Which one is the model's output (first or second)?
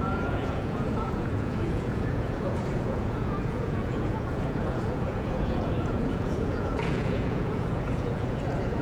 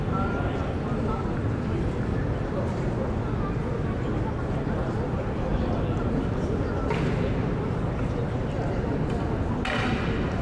first